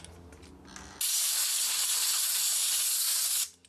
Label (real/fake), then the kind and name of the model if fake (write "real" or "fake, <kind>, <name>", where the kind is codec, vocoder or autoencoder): real